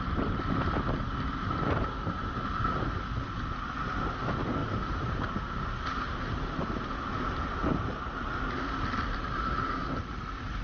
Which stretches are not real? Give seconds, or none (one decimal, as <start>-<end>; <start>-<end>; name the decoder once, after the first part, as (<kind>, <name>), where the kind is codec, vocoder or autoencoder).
4.6-6.9 (vocoder, BigVGAN v2)